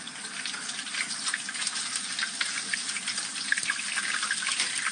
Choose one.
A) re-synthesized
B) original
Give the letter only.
B